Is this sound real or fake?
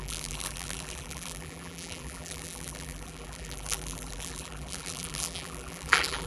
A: fake